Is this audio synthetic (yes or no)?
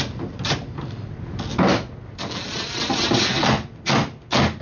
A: no